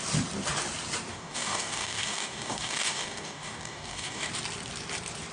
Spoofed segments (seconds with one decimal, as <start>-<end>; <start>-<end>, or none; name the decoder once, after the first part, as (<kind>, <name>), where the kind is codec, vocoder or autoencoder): 1.1-4.3 (codec, DAC)